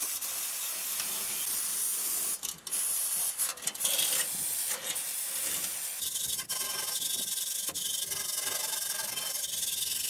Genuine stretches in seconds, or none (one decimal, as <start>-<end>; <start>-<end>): 0.0-10.1